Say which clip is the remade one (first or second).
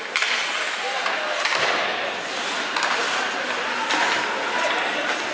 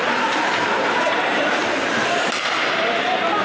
second